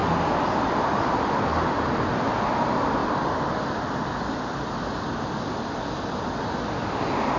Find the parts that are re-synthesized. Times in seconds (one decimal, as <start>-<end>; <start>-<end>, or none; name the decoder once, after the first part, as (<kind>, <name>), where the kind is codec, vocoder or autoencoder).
none